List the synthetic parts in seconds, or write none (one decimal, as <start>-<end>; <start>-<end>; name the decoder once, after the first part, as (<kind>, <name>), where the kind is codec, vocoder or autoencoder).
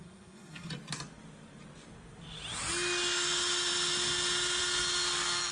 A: 0.0-0.7 (codec, SNAC)